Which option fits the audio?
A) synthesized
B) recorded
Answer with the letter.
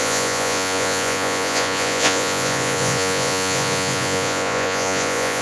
A